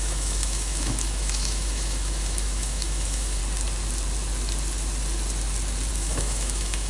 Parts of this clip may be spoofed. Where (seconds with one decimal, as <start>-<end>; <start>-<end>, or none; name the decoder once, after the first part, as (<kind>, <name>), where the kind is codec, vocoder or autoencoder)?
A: 0.0-3.4 (autoencoder, DAC-VAE); 5.9-6.9

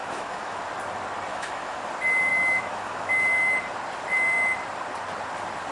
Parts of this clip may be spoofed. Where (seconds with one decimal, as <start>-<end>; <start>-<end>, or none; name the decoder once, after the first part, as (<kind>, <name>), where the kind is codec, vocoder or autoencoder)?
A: 0.0-0.6 (autoencoder, DAC-VAE); 1.3-1.8; 2.3-3.1